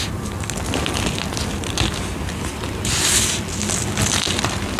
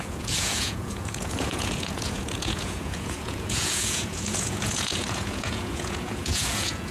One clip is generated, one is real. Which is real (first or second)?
first